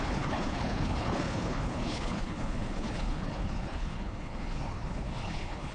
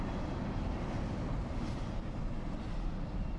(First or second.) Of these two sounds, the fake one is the first